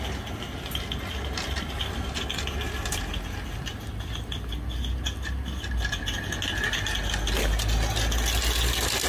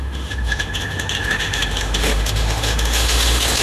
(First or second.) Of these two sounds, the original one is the first